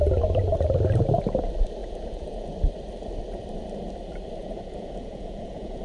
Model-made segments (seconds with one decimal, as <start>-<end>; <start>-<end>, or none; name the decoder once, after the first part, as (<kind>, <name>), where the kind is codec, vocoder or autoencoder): 1.8-2.5 (vocoder, Vocos); 4.4-5.8